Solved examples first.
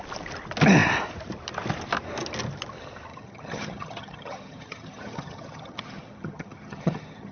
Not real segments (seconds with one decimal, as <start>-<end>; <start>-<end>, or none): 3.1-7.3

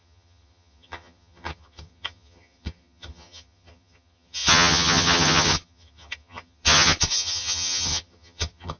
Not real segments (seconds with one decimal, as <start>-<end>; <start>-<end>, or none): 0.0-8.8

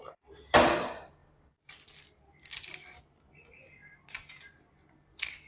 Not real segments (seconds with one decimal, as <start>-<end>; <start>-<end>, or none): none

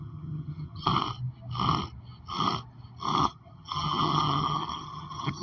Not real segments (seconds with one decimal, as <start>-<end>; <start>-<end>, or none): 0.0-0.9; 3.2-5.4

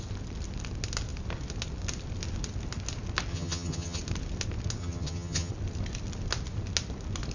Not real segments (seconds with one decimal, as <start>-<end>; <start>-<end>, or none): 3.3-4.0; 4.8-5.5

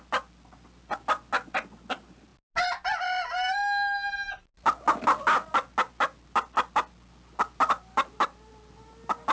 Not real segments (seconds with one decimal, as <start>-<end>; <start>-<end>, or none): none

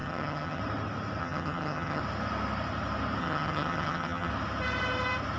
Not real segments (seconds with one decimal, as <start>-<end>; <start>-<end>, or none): 0.0-0.6; 1.2-2.0; 3.2-4.3